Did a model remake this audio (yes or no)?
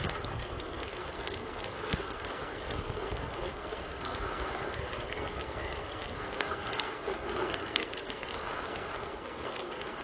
yes